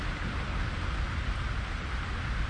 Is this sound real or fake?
real